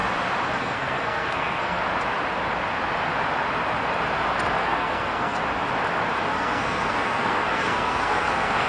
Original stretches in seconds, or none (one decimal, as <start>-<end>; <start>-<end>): 0.0-0.6; 1.8-4.6; 5.4-6.3

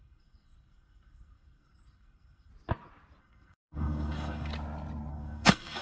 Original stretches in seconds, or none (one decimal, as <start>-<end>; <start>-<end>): 2.5-3.2; 4.5-5.1

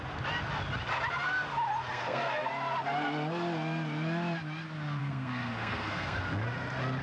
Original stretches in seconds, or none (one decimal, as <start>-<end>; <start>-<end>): 0.0-1.9; 2.5-5.0; 6.2-7.0

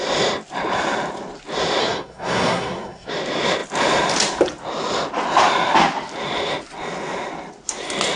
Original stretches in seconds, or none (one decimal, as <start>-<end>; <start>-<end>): 0.0-1.8; 3.1-8.2

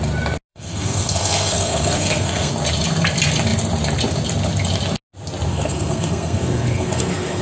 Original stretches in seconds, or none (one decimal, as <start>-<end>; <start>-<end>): 0.0-0.5; 2.5-5.5

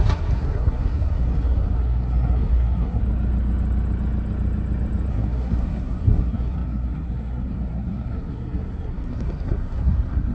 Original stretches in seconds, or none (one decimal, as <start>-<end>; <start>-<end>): 3.0-5.1